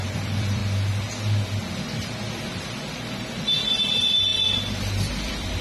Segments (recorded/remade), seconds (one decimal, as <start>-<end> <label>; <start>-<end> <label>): 0.0-0.6 remade; 0.6-2.3 recorded; 2.3-5.6 remade